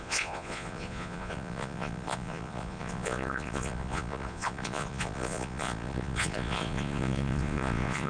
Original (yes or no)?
no